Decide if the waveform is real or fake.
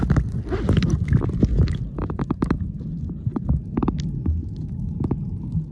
real